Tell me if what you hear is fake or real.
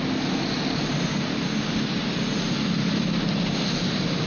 real